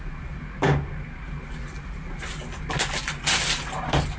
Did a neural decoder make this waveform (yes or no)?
no